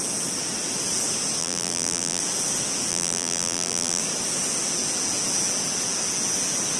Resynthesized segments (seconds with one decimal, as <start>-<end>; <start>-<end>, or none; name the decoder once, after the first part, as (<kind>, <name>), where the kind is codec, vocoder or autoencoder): 1.4-2.2 (vocoder, BigVGAN v2); 2.9-4.0